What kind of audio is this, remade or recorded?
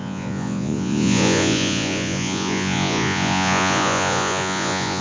remade